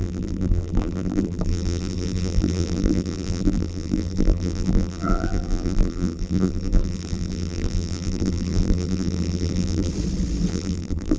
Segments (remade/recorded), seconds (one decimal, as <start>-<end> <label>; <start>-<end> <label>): 0.0-9.9 remade; 9.9-10.5 recorded; 10.5-11.2 remade

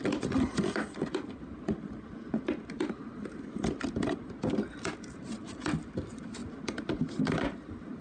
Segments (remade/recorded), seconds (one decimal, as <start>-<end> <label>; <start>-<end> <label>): 0.0-8.0 recorded

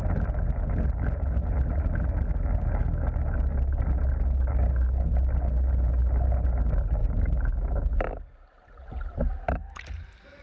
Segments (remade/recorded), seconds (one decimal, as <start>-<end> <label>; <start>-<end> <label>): 0.0-0.7 remade; 0.7-10.4 recorded

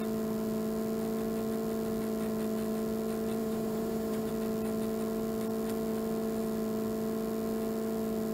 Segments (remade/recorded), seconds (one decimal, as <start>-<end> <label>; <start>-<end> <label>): 0.0-3.4 recorded; 3.4-4.3 remade; 4.3-8.3 recorded

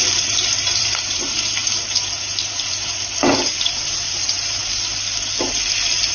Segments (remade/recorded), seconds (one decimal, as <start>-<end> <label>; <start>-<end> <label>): 0.0-4.6 remade; 4.6-6.1 recorded

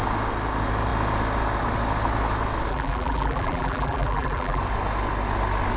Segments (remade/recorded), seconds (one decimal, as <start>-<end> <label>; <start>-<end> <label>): 0.0-2.7 recorded; 2.7-4.6 remade; 4.6-5.8 recorded